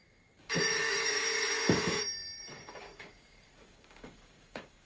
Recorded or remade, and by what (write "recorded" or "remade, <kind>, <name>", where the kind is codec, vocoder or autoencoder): remade, codec, DAC